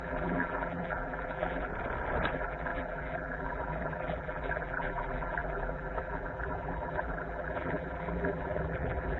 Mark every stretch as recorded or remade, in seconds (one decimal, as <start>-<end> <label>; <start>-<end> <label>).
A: 0.0-1.7 remade; 1.7-2.3 recorded; 2.3-9.2 remade